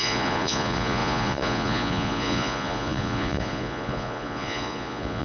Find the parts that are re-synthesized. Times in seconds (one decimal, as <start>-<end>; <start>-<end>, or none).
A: 0.0-5.2